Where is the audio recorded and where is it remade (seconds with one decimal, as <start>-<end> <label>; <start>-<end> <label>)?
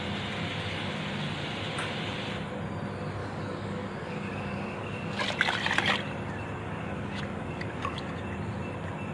0.0-3.2 recorded; 3.2-5.2 remade; 5.2-6.6 recorded; 6.6-8.2 remade; 8.2-9.1 recorded